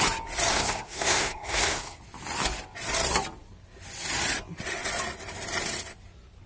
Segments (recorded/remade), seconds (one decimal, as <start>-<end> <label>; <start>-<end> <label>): 0.0-0.5 recorded; 0.5-2.0 remade; 2.0-6.5 recorded